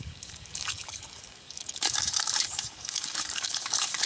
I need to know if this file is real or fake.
fake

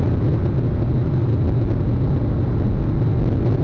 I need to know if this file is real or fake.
real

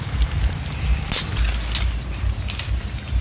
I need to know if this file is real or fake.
real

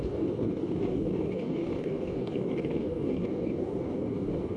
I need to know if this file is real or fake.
fake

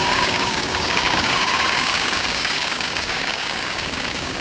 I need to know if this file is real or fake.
fake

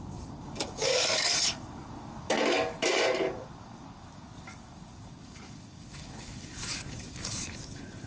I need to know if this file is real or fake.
fake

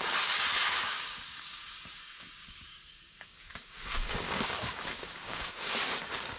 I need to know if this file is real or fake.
fake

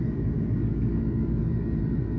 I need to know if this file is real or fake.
fake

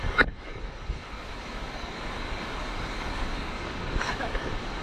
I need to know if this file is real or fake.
fake